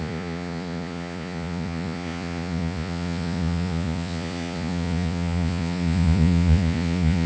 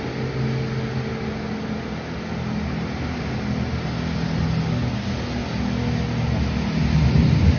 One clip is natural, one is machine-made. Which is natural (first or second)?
second